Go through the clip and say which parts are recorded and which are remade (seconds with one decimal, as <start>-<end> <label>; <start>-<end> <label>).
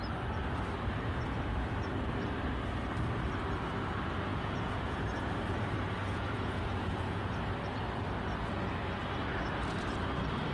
0.0-4.3 recorded; 4.3-5.2 remade; 5.2-6.0 recorded; 6.0-7.3 remade; 7.3-10.5 recorded